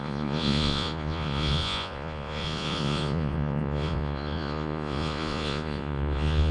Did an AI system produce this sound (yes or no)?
yes